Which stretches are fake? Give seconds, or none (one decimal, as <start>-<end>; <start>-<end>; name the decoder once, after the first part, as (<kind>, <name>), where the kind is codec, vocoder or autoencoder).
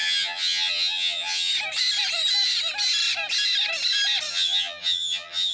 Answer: 0.0-1.5 (vocoder, HiFi-GAN); 4.3-5.5